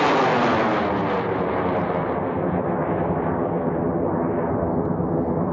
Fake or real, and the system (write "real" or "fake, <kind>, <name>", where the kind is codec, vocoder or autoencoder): real